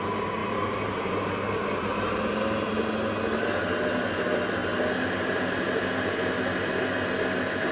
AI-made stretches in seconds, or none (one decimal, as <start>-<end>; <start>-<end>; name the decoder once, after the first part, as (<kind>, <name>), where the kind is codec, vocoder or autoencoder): 0.4-3.1 (vocoder, BigVGAN v2)

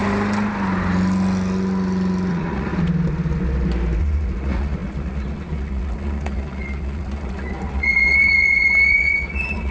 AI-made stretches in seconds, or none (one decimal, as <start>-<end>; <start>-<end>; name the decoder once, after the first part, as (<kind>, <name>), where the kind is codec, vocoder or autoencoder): 2.3-2.7 (vocoder, Vocos); 4.0-9.7

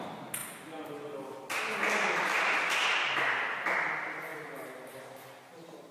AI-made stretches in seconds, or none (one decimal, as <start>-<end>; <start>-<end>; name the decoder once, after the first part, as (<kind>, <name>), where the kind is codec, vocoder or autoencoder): none

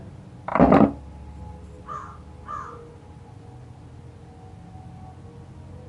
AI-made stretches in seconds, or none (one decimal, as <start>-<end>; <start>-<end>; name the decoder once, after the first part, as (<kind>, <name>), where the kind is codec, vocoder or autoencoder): 0.5-1.8 (vocoder, BigVGAN v2)

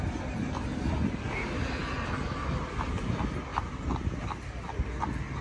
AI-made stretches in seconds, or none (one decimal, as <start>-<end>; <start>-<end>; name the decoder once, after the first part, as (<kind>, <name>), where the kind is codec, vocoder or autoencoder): none

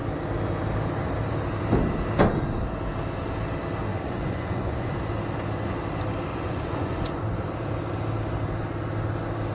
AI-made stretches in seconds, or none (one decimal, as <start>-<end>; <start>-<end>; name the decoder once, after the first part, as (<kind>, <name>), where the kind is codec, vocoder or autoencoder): 3.9-5.0 (vocoder, Vocos); 6.3-7.2